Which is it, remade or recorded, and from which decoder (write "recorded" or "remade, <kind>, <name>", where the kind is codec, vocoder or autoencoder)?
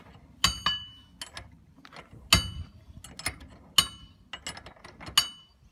recorded